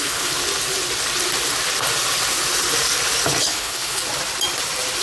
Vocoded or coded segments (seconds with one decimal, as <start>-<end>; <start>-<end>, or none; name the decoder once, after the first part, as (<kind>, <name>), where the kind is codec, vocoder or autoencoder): 0.0-0.4 (codec, HILCodec); 3.4-4.0